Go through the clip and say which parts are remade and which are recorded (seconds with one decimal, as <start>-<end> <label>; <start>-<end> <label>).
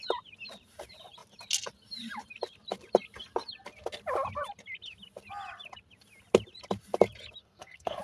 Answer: 0.0-7.4 recorded; 7.4-8.0 remade